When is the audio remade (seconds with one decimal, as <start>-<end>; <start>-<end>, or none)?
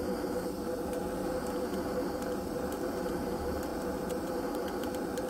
0.0-1.0; 2.2-5.3